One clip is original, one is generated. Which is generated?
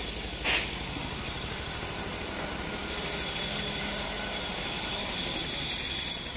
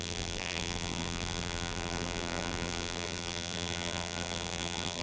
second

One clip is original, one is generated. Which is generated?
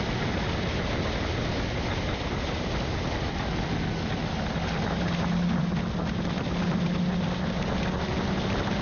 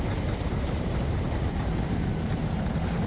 second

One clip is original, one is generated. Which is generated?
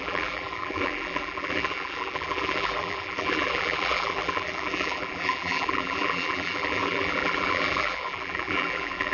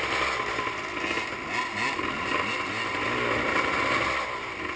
first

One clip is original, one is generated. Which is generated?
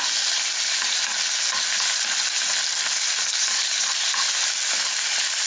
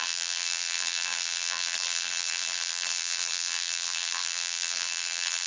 second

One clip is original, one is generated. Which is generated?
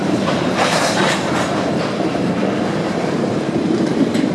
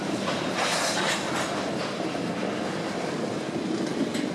first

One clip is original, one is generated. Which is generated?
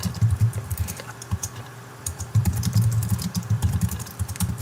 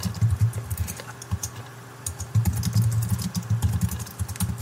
first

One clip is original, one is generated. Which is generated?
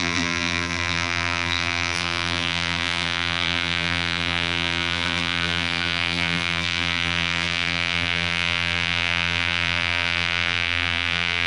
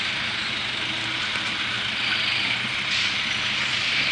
first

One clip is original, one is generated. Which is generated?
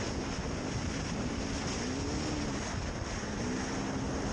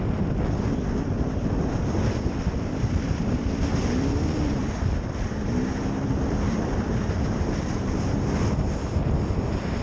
second